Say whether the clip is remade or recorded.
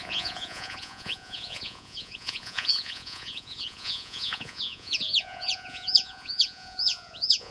remade